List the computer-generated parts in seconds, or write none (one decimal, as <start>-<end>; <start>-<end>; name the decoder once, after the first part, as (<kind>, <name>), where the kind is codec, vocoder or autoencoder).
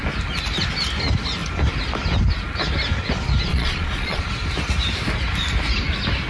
3.5-4.2 (vocoder, Vocos)